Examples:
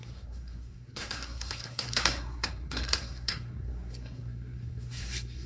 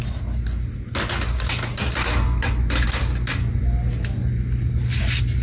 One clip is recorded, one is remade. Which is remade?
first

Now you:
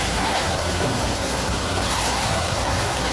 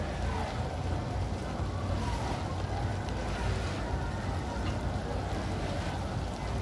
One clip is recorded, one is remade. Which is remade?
first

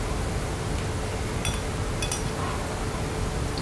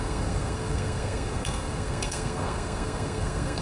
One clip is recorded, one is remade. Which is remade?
second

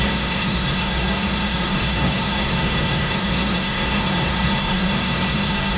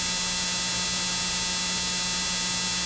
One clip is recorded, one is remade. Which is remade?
first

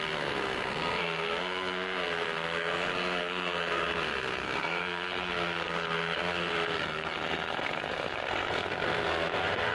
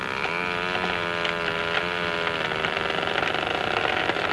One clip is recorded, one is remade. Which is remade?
first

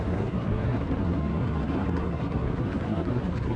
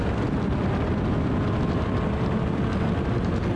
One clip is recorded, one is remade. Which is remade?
first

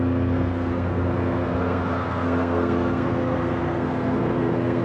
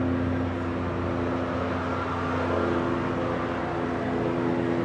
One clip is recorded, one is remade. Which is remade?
first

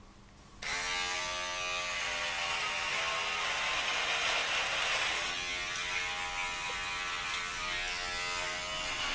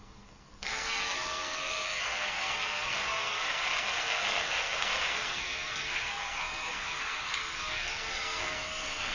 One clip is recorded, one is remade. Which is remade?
second